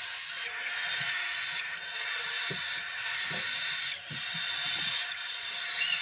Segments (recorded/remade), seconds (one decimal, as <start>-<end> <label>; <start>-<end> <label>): 0.0-6.0 recorded